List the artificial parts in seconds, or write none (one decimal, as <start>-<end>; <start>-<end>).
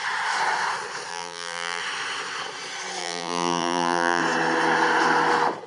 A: 1.1-1.8; 3.0-4.2